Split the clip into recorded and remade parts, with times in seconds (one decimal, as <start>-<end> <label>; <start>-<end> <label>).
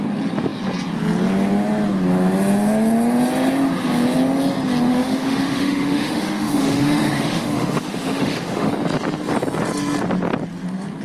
0.0-4.9 recorded; 4.9-8.7 remade; 8.7-11.0 recorded